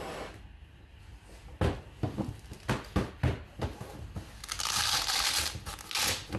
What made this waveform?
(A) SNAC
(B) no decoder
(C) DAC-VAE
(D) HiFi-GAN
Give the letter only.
B